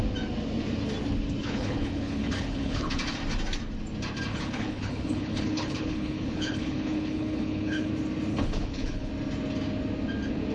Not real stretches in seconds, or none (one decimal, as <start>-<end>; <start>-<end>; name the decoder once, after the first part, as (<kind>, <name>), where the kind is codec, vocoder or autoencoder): 1.4-3.0 (codec, HILCodec); 4.3-7.9; 8.3-9.1